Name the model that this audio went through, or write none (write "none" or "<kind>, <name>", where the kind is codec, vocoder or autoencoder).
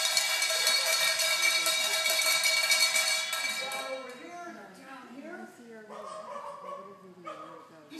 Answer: none